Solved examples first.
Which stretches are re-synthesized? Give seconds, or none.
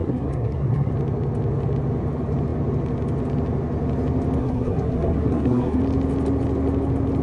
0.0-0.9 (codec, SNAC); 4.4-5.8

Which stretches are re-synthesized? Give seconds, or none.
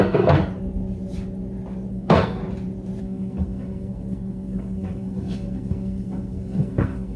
0.0-0.4 (codec, SNAC); 1.9-2.4; 3.0-7.2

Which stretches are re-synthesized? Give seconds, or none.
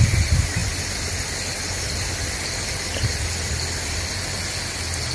none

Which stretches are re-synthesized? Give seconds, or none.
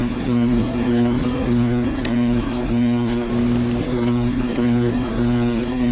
0.0-3.3 (codec, SNAC); 3.8-5.9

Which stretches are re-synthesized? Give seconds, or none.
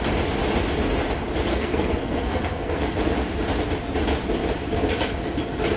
1.5-2.9 (codec, SNAC)